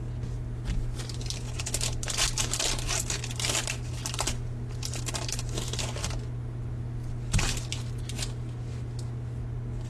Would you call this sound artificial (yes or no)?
no